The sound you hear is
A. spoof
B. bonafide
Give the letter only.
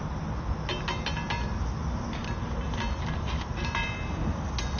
B